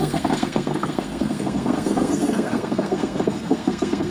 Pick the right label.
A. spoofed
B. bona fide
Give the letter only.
A